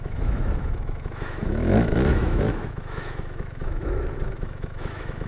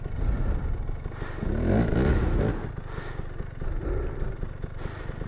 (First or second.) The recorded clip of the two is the second